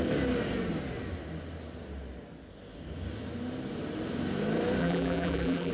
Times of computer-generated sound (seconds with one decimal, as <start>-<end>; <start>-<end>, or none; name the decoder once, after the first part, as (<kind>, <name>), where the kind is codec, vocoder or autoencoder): 4.8-5.7 (vocoder, BigVGAN v2)